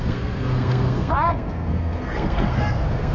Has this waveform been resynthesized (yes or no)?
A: yes